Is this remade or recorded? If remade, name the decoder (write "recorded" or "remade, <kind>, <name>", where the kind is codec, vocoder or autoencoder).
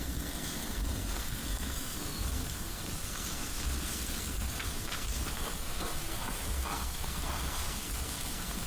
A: remade, codec, SNAC